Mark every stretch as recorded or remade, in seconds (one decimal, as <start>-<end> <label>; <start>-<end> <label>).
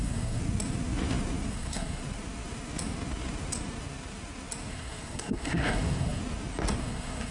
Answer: 0.0-0.4 remade; 0.4-1.5 recorded; 1.5-2.0 remade; 2.0-4.7 recorded; 4.7-6.2 remade; 6.2-6.8 recorded; 6.8-7.3 remade